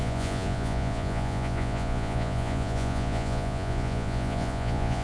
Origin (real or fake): fake